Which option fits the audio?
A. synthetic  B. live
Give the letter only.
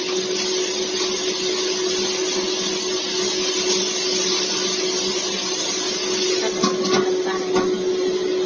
B